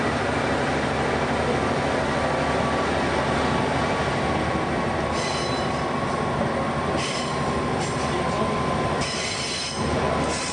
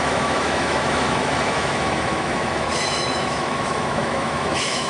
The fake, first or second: second